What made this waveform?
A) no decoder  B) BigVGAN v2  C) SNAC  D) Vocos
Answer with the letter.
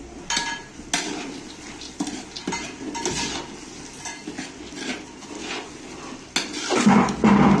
A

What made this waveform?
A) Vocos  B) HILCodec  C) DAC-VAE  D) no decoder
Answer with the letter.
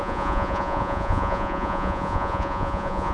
A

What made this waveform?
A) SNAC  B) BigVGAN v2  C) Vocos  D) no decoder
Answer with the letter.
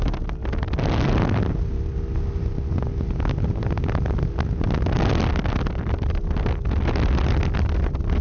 D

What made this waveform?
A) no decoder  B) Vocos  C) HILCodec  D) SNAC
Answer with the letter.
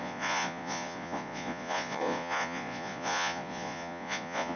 B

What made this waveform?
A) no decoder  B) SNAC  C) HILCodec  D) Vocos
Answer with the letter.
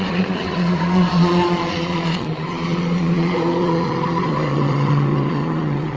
D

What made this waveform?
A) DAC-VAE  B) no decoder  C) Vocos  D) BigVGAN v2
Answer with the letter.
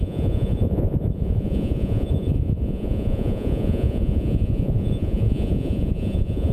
C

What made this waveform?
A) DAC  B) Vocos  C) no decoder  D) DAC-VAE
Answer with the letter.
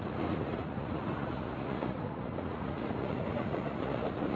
B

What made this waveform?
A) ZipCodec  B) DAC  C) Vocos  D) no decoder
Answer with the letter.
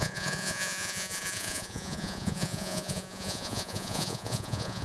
C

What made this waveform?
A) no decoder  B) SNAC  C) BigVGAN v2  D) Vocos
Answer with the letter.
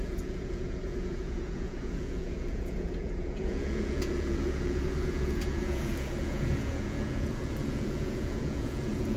D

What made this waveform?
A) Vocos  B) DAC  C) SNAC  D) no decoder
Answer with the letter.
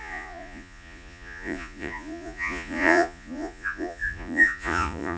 A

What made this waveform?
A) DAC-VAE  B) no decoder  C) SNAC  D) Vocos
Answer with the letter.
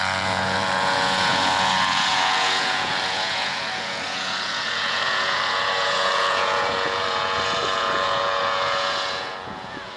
D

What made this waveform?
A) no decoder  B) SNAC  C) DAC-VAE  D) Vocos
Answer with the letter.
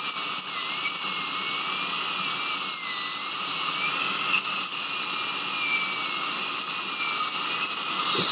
A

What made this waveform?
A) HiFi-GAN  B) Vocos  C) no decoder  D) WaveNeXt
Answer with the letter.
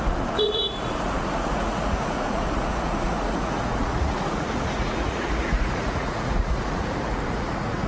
B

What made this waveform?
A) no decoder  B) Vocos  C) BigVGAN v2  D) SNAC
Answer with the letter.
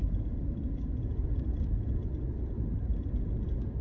A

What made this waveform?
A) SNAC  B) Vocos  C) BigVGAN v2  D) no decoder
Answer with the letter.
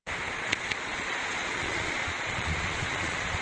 B